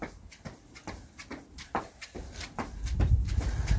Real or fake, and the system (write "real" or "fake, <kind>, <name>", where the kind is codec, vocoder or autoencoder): fake, vocoder, BigVGAN v2